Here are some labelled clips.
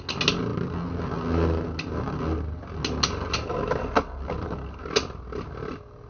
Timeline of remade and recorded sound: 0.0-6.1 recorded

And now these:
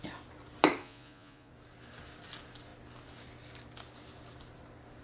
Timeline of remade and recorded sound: 0.0-0.8 recorded; 0.8-1.5 remade; 1.5-5.0 recorded

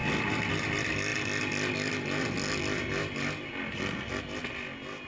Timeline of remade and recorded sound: 0.0-5.1 recorded

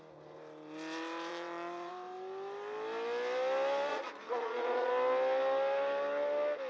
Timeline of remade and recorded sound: 0.0-1.3 recorded; 1.3-1.9 remade; 1.9-3.9 recorded; 3.9-4.9 remade; 4.9-6.7 recorded

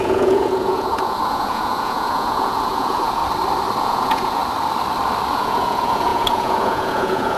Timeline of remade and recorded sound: 0.0-3.2 remade; 3.2-3.8 recorded; 3.8-4.4 remade; 4.4-5.3 recorded; 5.3-7.4 remade

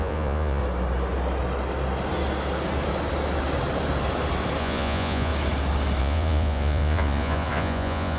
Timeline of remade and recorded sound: 0.0-0.6 remade; 0.6-4.6 recorded; 4.6-5.3 remade; 5.3-6.0 recorded; 6.0-8.2 remade

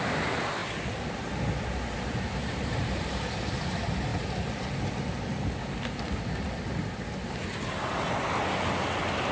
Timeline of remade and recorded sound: 0.0-9.3 recorded

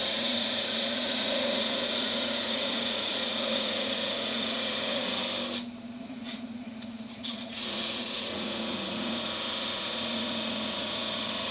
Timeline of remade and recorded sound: 0.0-5.2 remade; 5.2-6.0 recorded; 6.0-11.5 remade